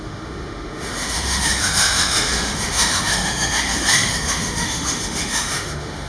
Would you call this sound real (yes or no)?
no